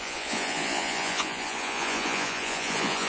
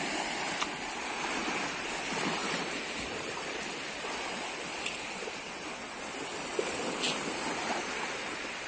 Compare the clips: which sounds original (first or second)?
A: second